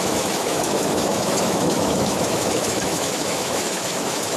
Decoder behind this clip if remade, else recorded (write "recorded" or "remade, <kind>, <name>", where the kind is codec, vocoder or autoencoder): remade, autoencoder, DAC-VAE